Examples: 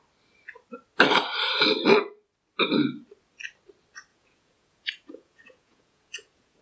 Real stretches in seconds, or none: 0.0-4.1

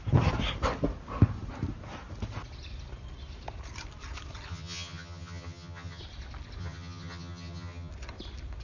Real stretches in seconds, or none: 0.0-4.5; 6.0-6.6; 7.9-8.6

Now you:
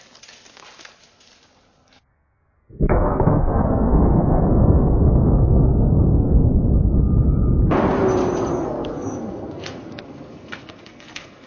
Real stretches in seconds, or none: 0.0-2.1; 6.5-8.5